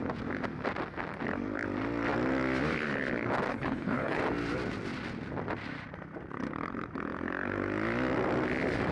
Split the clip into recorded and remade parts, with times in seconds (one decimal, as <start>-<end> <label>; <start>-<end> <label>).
0.0-3.5 recorded; 3.5-4.2 remade; 4.2-8.9 recorded